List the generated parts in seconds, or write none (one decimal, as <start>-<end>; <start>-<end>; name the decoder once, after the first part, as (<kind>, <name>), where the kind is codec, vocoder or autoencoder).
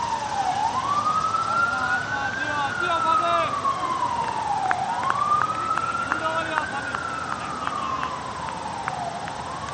none